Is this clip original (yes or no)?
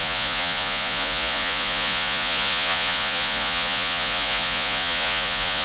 no